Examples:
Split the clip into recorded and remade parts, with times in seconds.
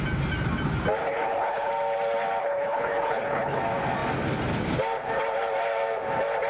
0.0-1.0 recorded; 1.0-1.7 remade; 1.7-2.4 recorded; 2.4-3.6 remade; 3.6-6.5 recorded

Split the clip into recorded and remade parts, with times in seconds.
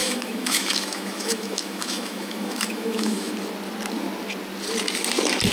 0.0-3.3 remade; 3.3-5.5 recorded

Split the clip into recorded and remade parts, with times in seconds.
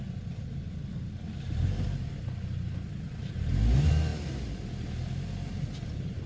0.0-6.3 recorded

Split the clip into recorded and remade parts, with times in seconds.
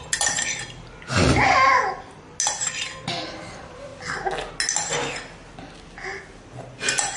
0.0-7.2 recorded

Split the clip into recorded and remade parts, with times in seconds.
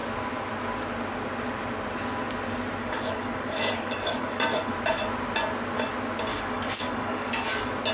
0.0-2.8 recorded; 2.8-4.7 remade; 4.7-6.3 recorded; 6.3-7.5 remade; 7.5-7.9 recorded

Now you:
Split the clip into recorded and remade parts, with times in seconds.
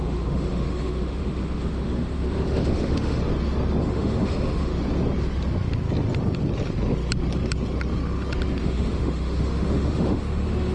0.0-3.2 remade; 3.2-3.8 recorded; 3.8-4.7 remade; 4.7-8.6 recorded; 8.6-10.7 remade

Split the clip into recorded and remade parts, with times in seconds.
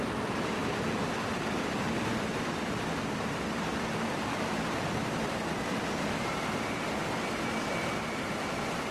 0.0-7.0 remade; 7.0-8.1 recorded; 8.1-8.9 remade